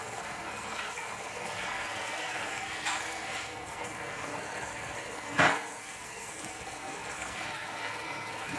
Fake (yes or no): yes